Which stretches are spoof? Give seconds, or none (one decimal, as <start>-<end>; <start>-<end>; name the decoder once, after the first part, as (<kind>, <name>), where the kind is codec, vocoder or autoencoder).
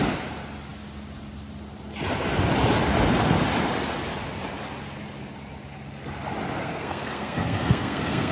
6.6-8.3 (codec, SNAC)